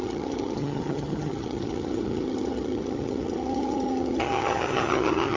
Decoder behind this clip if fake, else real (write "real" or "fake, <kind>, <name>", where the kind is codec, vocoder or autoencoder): fake, vocoder, HiFi-GAN